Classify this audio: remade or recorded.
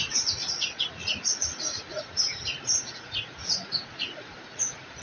remade